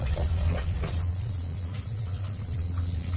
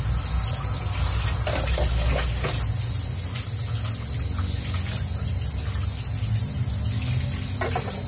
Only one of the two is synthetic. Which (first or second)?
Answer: first